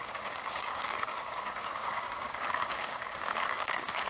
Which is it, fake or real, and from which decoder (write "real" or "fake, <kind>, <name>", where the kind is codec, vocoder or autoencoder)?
fake, codec, DAC